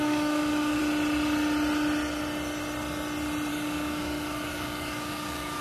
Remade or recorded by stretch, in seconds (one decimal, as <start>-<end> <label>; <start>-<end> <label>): 0.0-0.8 remade; 0.8-3.5 recorded; 3.5-5.6 remade